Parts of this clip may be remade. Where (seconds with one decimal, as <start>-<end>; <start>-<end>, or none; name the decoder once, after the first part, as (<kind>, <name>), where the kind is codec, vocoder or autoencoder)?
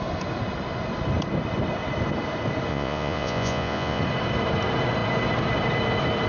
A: 2.7-4.0 (vocoder, Vocos)